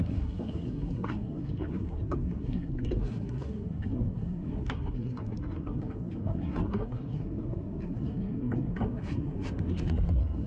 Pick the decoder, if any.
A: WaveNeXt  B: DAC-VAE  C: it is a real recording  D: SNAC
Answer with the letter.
D